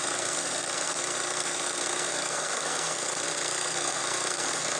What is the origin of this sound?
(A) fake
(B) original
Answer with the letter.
A